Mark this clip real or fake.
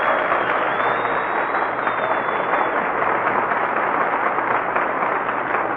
real